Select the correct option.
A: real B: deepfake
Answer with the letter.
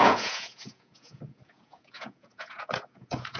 B